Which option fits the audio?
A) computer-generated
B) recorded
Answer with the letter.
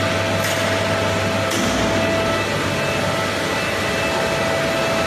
B